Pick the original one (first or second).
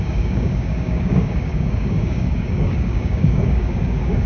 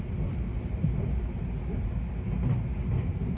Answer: second